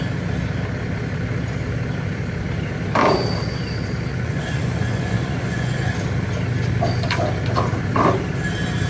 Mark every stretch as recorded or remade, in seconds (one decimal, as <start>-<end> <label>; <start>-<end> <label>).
0.0-4.1 recorded; 4.1-5.9 remade; 5.9-8.9 recorded